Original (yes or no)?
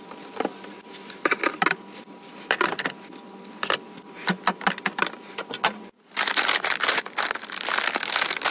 yes